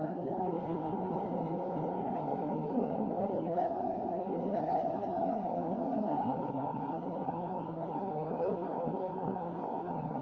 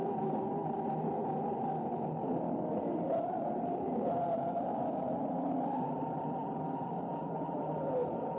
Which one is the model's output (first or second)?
first